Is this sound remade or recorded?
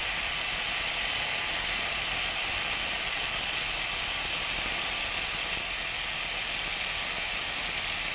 recorded